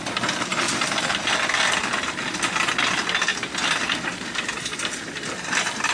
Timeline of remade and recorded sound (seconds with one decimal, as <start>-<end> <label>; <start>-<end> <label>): 0.0-0.5 recorded; 0.5-1.8 remade; 1.8-3.3 recorded; 3.3-5.9 remade